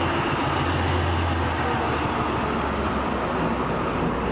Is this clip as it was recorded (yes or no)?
yes